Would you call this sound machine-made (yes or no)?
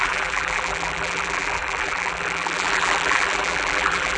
yes